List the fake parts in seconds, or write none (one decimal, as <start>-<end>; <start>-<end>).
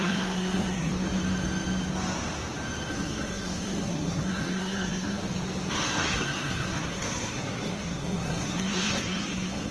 0.0-0.9; 2.9-5.2; 5.7-9.7